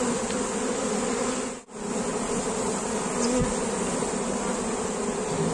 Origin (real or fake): real